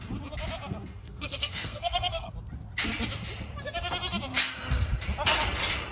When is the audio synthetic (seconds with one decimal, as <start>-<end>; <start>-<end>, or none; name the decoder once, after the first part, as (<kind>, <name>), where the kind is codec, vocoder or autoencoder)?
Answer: 1.0-2.3 (codec, SNAC)